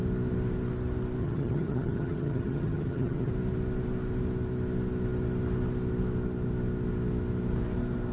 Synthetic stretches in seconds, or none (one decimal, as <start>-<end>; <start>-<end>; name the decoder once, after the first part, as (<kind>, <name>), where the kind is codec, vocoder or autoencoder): 1.2-3.3 (vocoder, HiFi-GAN)